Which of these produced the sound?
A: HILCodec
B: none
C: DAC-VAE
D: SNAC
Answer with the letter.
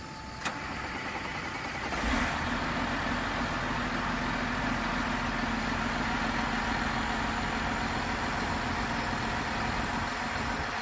B